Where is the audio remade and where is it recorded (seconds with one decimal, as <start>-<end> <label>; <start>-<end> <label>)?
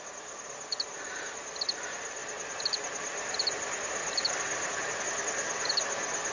0.0-6.3 recorded